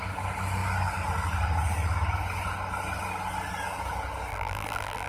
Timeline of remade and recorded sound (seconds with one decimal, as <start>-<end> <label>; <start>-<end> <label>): 0.0-4.3 recorded; 4.3-5.1 remade